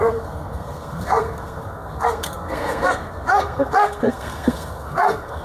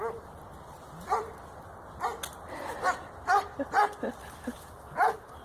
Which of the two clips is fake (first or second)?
first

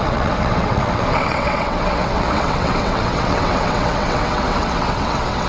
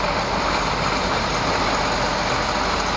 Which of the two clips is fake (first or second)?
first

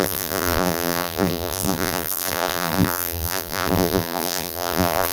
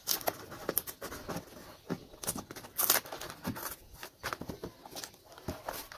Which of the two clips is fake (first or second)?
first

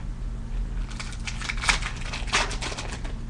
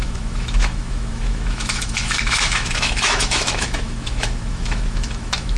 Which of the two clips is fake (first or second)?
second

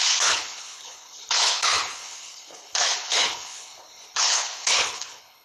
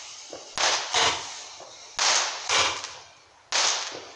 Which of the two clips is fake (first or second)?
first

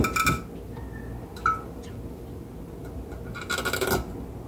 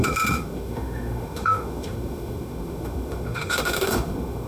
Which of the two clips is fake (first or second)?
second